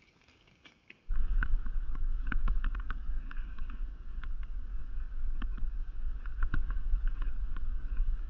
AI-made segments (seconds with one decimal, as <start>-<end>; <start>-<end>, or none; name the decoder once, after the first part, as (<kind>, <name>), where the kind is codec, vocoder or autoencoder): 0.0-8.3 (codec, DAC)